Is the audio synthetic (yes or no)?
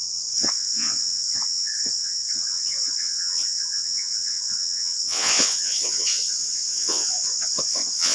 yes